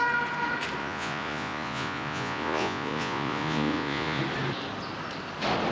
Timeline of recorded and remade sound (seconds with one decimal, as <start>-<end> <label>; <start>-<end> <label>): 0.0-0.8 recorded; 0.8-4.2 remade; 4.2-5.7 recorded